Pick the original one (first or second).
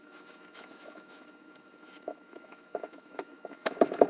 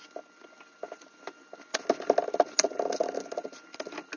second